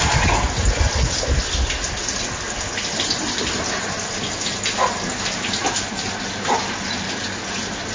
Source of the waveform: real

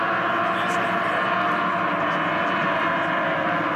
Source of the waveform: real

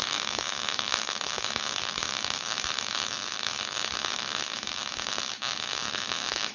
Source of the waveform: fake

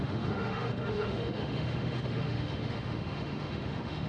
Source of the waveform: fake